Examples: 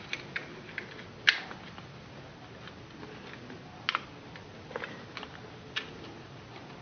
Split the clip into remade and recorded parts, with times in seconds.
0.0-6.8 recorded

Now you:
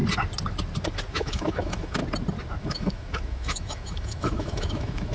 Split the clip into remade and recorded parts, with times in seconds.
0.0-1.1 recorded; 1.1-2.0 remade; 2.0-2.6 recorded; 2.6-5.1 remade

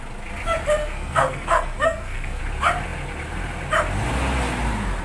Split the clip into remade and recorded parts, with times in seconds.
0.0-0.8 recorded; 0.8-2.4 remade; 2.4-5.0 recorded

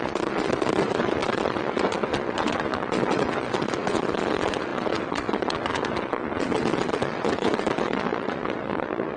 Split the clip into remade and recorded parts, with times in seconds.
0.0-9.2 remade

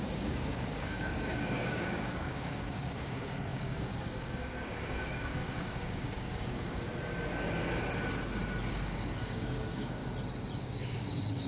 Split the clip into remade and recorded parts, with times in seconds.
0.0-6.9 remade; 6.9-8.7 recorded; 8.7-10.0 remade; 10.0-10.6 recorded; 10.6-11.5 remade

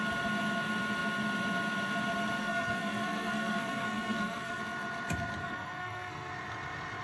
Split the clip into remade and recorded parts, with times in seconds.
0.0-2.4 recorded; 2.4-4.6 remade; 4.6-5.4 recorded; 5.4-6.3 remade; 6.3-7.0 recorded

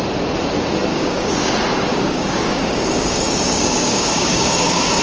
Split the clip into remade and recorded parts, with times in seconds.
0.0-0.9 recorded; 0.9-1.5 remade; 1.5-1.9 recorded; 1.9-5.0 remade

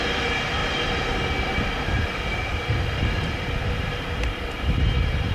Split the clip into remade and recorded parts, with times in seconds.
0.0-5.3 recorded